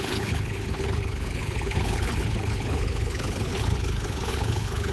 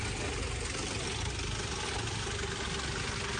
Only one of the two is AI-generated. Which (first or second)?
first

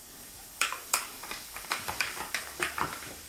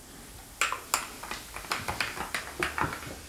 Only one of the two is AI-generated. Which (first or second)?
first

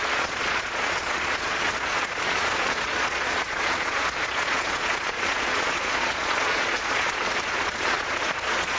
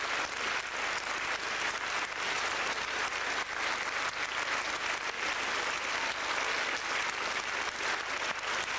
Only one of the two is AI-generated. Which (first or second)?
first